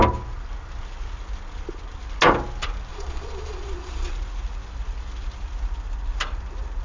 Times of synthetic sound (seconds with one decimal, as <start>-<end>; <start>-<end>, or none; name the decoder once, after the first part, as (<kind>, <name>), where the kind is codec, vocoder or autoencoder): 2.9-4.1 (vocoder, Vocos)

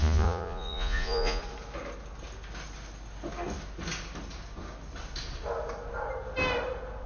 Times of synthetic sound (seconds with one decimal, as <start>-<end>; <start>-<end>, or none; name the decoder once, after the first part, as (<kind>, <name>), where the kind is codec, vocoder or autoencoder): 0.0-1.4 (vocoder, Vocos)

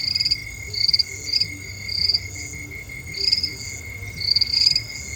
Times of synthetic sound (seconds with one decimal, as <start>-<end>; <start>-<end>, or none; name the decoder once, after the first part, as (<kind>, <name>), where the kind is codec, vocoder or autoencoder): none

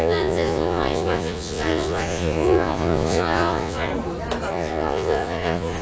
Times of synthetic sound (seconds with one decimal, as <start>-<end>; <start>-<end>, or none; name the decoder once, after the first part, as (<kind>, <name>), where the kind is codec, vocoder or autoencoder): 0.0-3.9 (vocoder, Vocos); 4.5-5.8

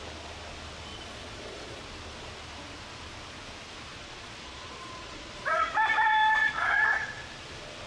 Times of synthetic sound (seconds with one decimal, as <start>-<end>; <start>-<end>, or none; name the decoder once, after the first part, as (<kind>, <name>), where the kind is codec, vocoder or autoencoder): 0.9-1.8 (vocoder, Vocos); 3.9-5.7; 6.4-7.2

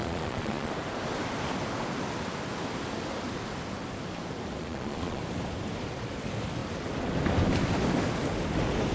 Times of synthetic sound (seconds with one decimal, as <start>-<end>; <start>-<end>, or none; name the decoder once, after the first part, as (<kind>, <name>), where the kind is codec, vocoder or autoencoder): 0.0-0.7 (vocoder, Vocos); 4.6-5.2

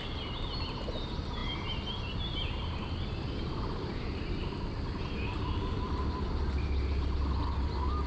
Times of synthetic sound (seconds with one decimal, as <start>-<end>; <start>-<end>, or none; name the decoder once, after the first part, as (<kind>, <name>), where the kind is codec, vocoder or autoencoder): none

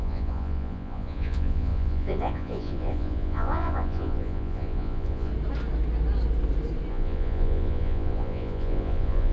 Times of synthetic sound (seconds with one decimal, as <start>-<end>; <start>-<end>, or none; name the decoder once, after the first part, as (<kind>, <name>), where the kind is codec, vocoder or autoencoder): 0.0-5.3 (vocoder, Vocos); 6.9-9.3